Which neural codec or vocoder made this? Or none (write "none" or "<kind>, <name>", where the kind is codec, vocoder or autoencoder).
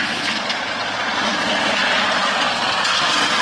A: vocoder, Vocos